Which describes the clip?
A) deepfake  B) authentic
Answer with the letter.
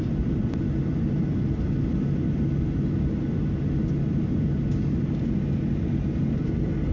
B